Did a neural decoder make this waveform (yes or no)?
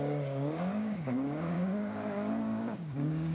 yes